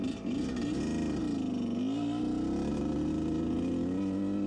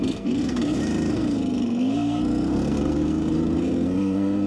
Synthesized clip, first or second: second